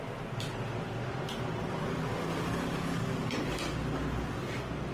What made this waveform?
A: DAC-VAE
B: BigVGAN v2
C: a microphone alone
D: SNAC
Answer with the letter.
C